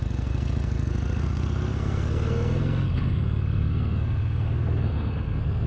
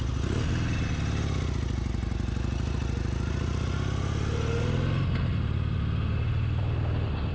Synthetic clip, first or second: first